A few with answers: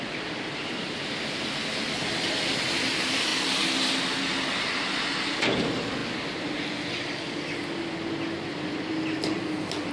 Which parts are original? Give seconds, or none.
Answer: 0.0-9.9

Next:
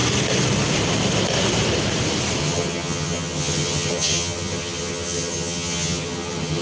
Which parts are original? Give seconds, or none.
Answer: 0.0-2.4